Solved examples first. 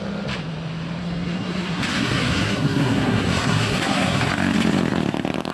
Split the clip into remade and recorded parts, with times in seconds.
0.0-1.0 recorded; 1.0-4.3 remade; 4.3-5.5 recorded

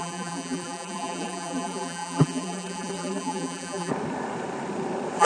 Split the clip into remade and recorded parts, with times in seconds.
0.0-3.9 remade; 3.9-5.2 recorded

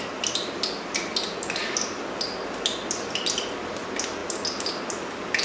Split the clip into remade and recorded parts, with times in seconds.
0.0-5.4 recorded

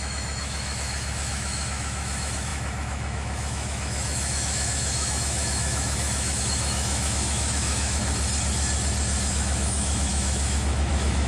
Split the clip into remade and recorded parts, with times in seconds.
0.0-8.0 remade; 8.0-9.3 recorded; 9.3-11.3 remade

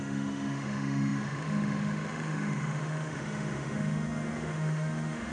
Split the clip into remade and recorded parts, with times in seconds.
0.0-5.3 remade

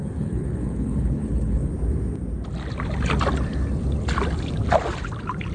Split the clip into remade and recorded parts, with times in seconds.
0.0-1.7 remade; 1.7-5.5 recorded

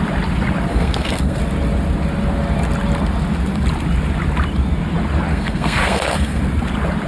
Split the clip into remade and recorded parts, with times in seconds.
0.0-0.7 recorded; 0.7-1.4 remade; 1.4-5.3 recorded; 5.3-6.4 remade; 6.4-7.1 recorded